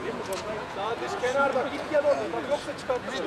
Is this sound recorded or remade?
remade